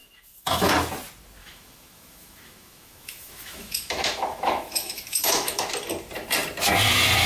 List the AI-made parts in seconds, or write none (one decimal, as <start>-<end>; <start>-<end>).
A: 0.0-0.7; 1.4-5.7